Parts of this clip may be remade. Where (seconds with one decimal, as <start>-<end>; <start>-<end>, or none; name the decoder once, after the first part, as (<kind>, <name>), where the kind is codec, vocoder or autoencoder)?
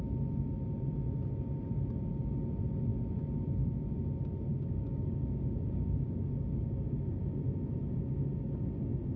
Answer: 4.5-7.2 (codec, DAC)